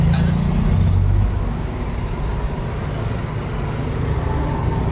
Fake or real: real